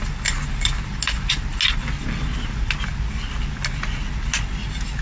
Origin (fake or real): real